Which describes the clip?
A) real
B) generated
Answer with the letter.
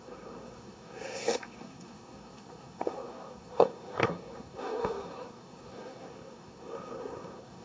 B